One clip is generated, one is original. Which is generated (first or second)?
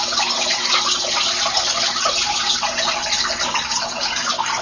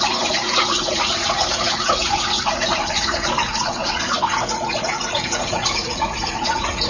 second